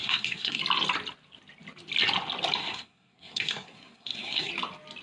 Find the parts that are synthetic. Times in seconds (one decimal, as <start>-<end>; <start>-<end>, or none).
0.0-0.6; 2.6-4.5